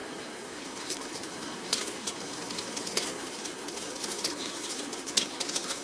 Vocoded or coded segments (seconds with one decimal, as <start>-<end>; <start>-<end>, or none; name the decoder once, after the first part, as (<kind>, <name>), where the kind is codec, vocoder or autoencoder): 0.0-5.8 (codec, SNAC)